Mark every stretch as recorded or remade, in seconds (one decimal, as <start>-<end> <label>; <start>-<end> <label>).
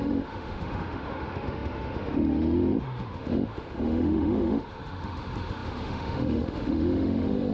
0.0-7.5 remade